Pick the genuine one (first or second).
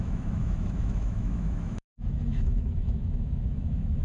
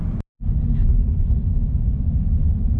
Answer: second